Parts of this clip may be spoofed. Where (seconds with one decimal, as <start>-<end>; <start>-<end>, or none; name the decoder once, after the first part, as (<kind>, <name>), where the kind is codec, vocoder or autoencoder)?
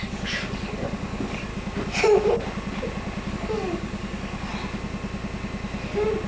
0.0-1.5 (codec, DAC); 3.3-4.5